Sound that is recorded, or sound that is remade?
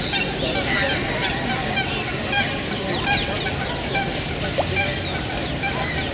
recorded